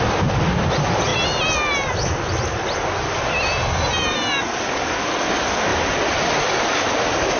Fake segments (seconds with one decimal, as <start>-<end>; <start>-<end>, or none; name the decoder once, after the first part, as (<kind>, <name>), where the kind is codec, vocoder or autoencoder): none